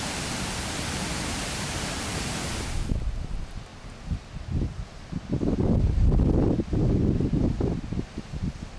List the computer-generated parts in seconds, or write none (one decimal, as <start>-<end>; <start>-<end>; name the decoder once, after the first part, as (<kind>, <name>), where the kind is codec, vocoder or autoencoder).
0.0-3.7 (vocoder, BigVGAN v2); 5.2-8.8